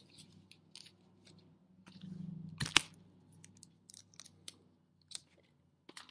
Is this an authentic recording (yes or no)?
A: yes